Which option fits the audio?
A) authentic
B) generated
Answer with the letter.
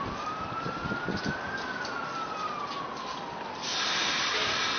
A